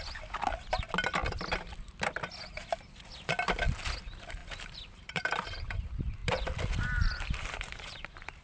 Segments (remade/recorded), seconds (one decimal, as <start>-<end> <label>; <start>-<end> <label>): 0.0-4.4 recorded; 4.4-5.7 remade; 5.7-6.2 recorded; 6.2-8.4 remade